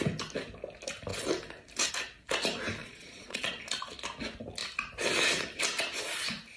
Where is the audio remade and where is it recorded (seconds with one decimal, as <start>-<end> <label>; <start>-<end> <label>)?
0.0-2.8 recorded; 2.8-3.5 remade; 3.5-6.6 recorded